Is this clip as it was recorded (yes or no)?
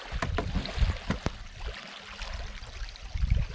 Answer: yes